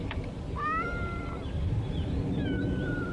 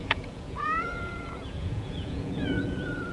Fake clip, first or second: second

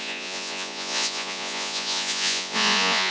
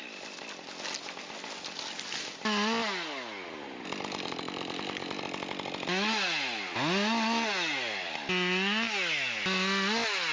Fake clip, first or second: first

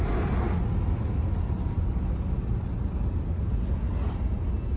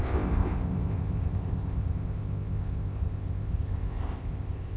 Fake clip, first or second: second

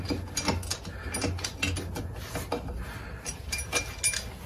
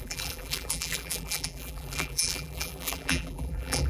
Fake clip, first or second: second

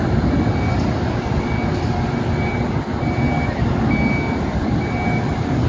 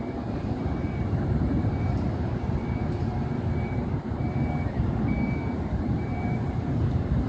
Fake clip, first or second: second